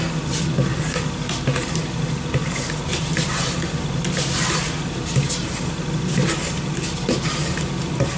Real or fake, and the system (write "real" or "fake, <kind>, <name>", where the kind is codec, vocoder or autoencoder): real